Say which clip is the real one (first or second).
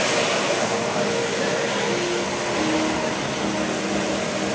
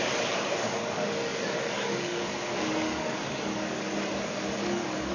first